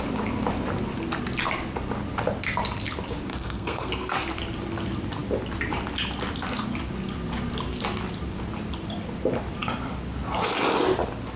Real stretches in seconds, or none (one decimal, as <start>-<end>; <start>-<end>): 0.0-3.3; 3.9-11.4